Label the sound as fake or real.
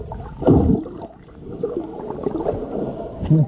real